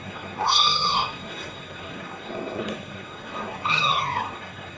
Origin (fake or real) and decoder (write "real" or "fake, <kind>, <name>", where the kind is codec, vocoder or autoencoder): fake, codec, SNAC